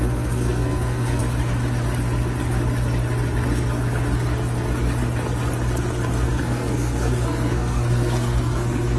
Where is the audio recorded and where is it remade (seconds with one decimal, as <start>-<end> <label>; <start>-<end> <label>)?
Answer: 0.0-1.2 remade; 1.2-6.3 recorded; 6.3-9.0 remade